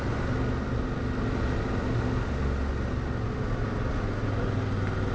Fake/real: real